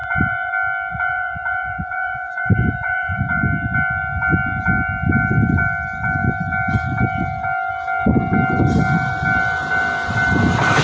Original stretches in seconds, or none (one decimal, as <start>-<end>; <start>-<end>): 0.5-0.9; 3.4-10.8